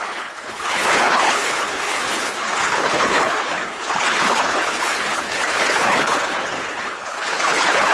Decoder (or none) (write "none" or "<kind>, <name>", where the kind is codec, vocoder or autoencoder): codec, HILCodec